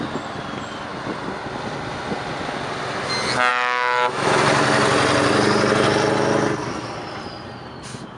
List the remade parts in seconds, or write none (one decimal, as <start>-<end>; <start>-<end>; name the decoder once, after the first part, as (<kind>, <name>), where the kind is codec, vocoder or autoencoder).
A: 3.5-4.4 (autoencoder, DAC-VAE)